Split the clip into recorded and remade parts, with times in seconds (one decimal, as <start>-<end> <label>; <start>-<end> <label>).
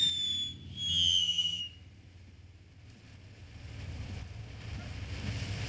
0.0-0.9 recorded; 0.9-1.6 remade; 1.6-5.7 recorded